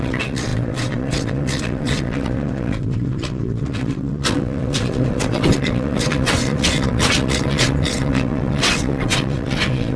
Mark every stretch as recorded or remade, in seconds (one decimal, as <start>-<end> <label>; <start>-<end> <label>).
0.0-10.0 remade